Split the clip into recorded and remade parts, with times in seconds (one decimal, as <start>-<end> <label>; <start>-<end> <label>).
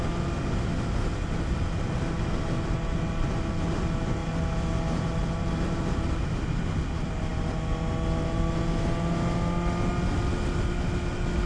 0.0-11.5 recorded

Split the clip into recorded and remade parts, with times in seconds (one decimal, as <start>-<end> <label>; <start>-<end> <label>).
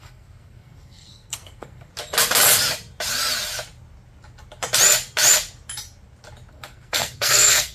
0.0-1.9 remade; 1.9-6.5 recorded; 6.5-7.7 remade